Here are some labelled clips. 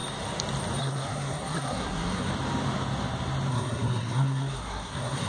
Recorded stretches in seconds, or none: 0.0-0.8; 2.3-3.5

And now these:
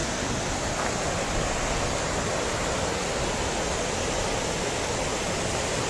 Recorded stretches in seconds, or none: 0.0-5.9

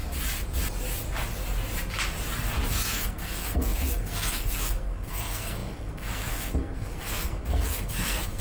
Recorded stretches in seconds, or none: 0.0-2.7

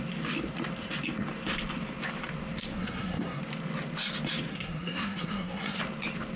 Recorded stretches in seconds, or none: 0.0-2.7; 3.4-4.5; 5.8-6.4

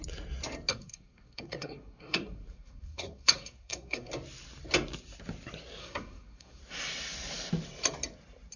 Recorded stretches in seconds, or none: 0.0-0.7; 4.1-5.8; 6.6-8.6

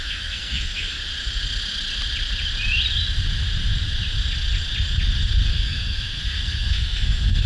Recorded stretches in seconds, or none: 1.0-5.5

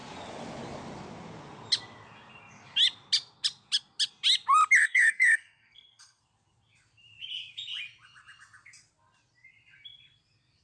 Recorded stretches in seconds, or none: 0.0-4.8; 6.2-10.6